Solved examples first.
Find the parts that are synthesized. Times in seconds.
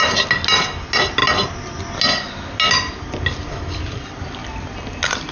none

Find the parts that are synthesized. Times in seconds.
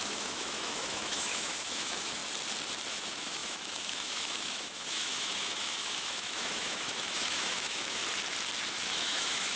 0.0-2.2 (autoencoder, DAC-VAE); 2.9-8.0; 8.7-9.6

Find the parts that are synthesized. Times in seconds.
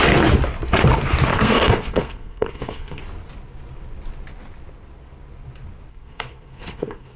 1.3-3.0 (codec, SNAC); 5.9-7.2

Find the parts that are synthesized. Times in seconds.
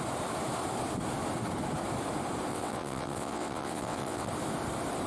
2.5-4.3 (vocoder, WaveNeXt)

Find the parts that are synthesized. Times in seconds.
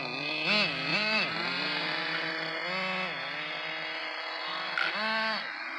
0.9-2.3 (vocoder, BigVGAN v2); 4.0-4.5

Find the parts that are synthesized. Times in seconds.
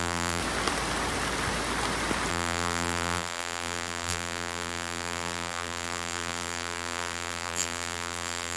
0.0-0.4 (vocoder, BigVGAN v2); 2.3-8.6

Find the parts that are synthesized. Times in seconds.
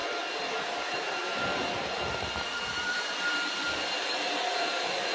0.0-5.1 (vocoder, BigVGAN v2)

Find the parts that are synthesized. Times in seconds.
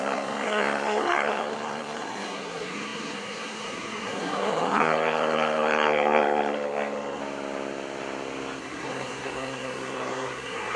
0.0-7.2 (codec, SNAC); 8.6-10.8